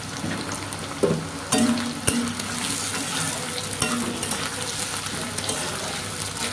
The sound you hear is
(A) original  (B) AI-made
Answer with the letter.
A